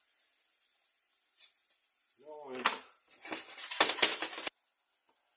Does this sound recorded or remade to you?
recorded